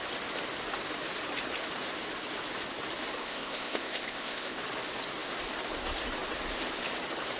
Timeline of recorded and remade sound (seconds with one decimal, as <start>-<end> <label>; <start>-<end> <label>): 0.0-3.2 recorded; 3.2-4.6 remade; 4.6-7.4 recorded